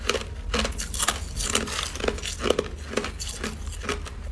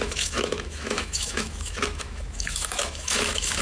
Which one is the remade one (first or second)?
second